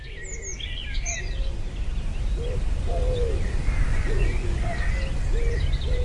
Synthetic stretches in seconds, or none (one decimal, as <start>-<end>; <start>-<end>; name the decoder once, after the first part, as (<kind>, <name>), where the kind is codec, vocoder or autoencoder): 3.9-4.6 (vocoder, Vocos)